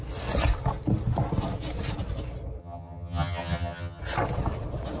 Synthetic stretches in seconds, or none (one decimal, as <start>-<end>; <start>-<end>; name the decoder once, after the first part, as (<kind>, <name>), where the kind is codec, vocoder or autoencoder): 2.6-4.0 (vocoder, HiFi-GAN)